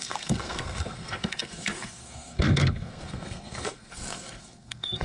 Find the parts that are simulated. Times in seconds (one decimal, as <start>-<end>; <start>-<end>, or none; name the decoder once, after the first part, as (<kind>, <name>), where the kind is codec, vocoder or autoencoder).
0.0-5.0 (codec, SNAC)